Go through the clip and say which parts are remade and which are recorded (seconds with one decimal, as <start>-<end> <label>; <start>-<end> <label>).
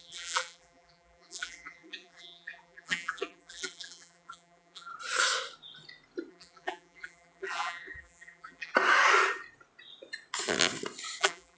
0.0-4.9 remade; 4.9-6.3 recorded; 6.3-8.7 remade; 8.7-11.2 recorded; 11.2-11.6 remade